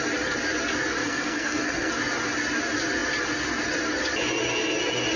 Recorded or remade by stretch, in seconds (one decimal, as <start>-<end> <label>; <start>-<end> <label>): 0.0-1.0 recorded; 1.0-1.9 remade; 1.9-5.2 recorded